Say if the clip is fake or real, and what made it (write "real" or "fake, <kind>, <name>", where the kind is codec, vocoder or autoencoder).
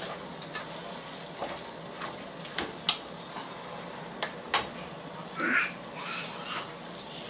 real